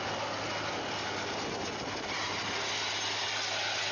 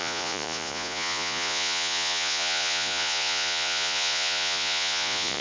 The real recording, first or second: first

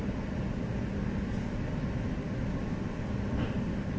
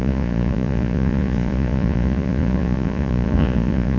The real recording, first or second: first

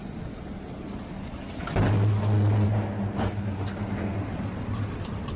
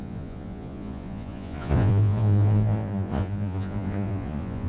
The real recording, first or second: first